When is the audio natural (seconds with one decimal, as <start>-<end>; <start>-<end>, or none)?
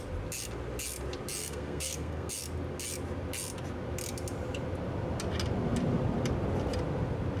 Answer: 0.0-1.4; 2.3-7.4